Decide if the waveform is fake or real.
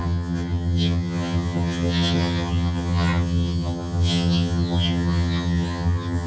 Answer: fake